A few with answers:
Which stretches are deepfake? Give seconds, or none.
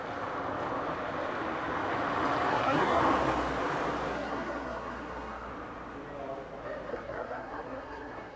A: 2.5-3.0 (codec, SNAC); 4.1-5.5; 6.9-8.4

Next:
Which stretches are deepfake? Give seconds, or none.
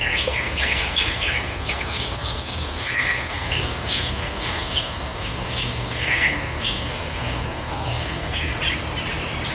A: 0.0-8.5 (codec, SNAC)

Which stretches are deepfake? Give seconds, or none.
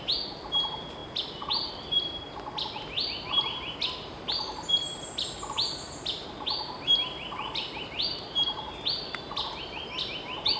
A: none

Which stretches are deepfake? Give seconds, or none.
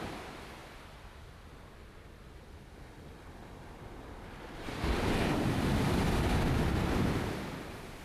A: none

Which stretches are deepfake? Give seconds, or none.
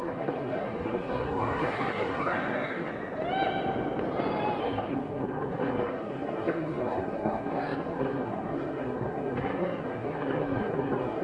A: 0.0-2.9 (codec, SNAC); 4.6-11.2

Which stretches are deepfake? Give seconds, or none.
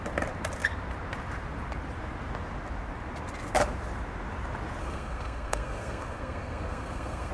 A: 4.8-7.3 (codec, SNAC)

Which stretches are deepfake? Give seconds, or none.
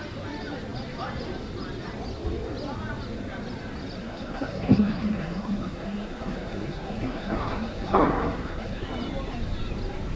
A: 4.0-8.9 (codec, SNAC)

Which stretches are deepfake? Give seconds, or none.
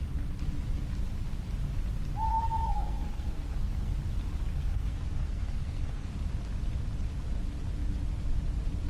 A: 2.3-3.9 (codec, SNAC); 4.5-6.1